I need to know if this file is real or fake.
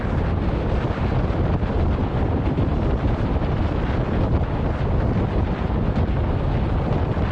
fake